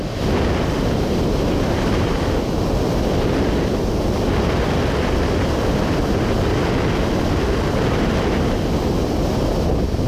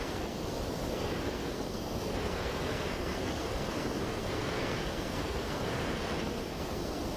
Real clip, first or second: first